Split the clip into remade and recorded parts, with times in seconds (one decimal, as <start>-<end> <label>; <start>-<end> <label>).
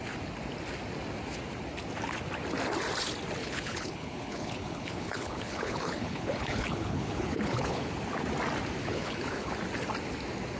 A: 0.0-3.4 recorded; 3.4-7.9 remade; 7.9-8.8 recorded; 8.8-9.5 remade; 9.5-10.6 recorded